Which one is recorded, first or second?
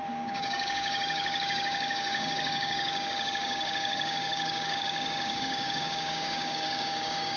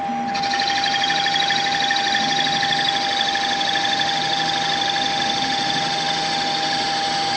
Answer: second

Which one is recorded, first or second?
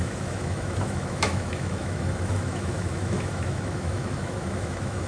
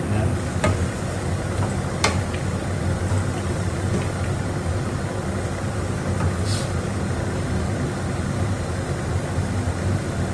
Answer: second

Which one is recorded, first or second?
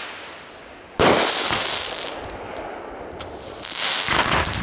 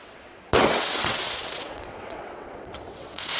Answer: first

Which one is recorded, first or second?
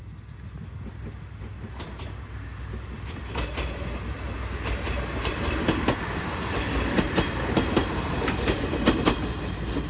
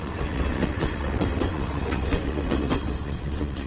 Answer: first